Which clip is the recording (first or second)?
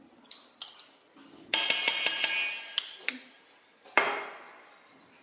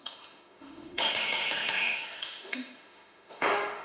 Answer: first